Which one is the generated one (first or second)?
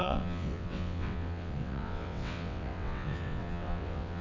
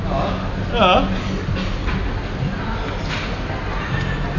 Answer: first